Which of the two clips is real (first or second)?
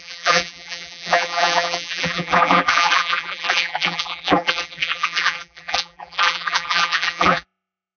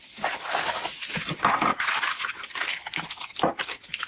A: second